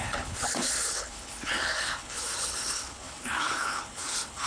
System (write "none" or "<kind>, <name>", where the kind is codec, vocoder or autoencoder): codec, HILCodec